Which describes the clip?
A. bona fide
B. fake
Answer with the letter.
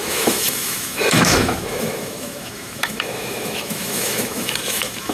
B